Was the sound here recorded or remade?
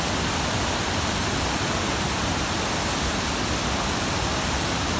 recorded